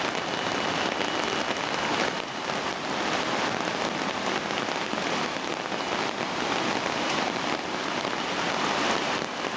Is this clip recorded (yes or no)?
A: yes